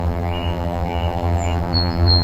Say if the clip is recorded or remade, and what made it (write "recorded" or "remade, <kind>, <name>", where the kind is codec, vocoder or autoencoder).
remade, vocoder, BigVGAN v2